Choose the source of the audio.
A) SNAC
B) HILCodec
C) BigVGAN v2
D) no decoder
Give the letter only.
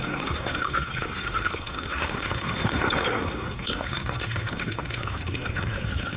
A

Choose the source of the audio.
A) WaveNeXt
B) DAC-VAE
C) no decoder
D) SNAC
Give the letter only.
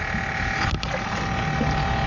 C